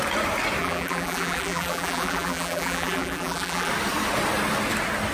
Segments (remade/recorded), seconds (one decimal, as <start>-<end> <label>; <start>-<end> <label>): 0.0-0.6 recorded; 0.6-3.7 remade; 3.7-5.1 recorded